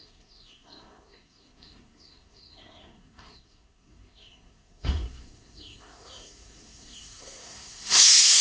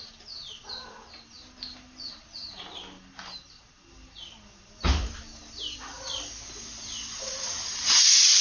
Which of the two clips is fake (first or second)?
first